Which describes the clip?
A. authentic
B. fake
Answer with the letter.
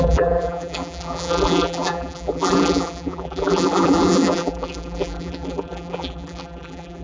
B